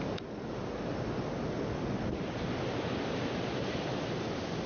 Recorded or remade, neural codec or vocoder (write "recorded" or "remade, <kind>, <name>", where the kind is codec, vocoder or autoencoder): recorded